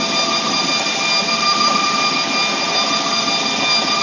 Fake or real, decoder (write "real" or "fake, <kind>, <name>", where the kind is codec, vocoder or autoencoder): real